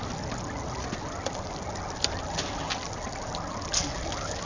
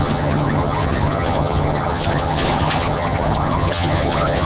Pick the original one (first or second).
first